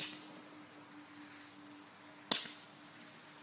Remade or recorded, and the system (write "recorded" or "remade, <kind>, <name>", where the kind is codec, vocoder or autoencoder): recorded